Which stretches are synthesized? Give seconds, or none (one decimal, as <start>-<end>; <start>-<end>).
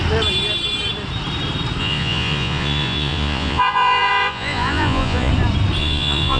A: 1.8-5.3; 5.8-6.4